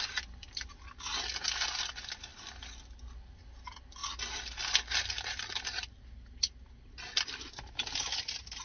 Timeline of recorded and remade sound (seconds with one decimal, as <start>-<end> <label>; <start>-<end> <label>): 0.0-8.6 recorded